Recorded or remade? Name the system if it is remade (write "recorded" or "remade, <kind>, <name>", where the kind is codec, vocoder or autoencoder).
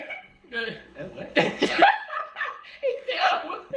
remade, codec, HILCodec